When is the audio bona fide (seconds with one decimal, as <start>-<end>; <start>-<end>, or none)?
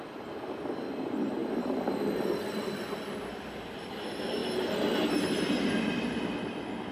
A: 0.0-6.9